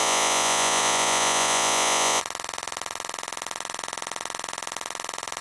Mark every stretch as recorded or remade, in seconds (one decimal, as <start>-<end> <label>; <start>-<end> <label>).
0.0-2.2 remade; 2.2-5.4 recorded